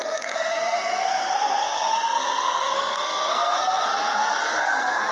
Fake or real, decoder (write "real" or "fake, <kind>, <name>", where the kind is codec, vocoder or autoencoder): fake, codec, SNAC